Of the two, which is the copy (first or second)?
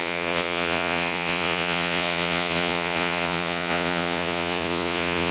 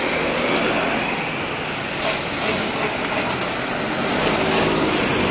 first